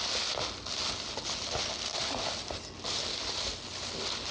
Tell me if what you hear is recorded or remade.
recorded